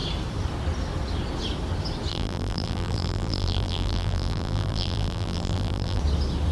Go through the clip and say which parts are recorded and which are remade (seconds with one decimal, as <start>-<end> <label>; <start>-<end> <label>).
0.0-2.1 recorded; 2.1-6.0 remade; 6.0-6.5 recorded